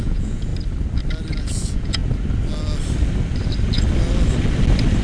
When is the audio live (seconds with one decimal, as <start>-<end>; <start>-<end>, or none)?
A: 0.5-1.4; 2.0-5.0